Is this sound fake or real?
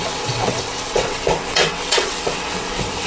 fake